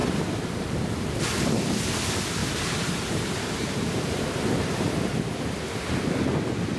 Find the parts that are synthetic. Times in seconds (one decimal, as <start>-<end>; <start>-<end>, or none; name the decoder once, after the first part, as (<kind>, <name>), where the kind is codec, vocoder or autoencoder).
0.0-1.1 (vocoder, BigVGAN v2); 2.4-5.5